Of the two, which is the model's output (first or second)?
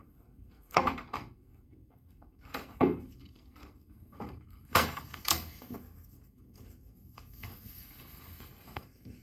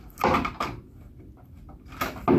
first